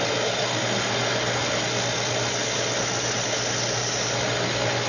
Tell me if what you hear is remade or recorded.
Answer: recorded